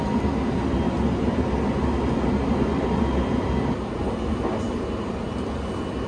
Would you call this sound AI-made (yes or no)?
no